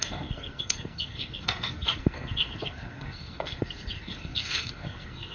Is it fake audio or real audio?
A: fake